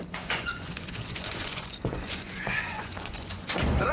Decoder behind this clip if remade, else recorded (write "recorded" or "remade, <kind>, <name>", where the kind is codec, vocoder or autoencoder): remade, vocoder, Vocos